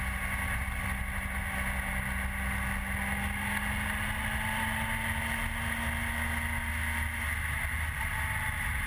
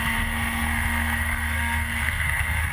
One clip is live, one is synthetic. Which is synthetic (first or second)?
second